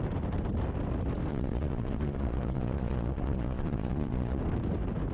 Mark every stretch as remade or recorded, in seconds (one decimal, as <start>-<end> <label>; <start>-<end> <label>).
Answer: 0.0-1.3 recorded; 1.3-4.4 remade; 4.4-5.1 recorded